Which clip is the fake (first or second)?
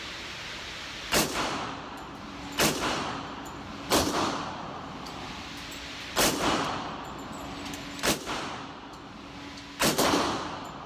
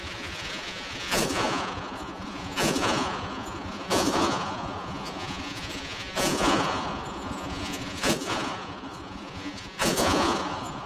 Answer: second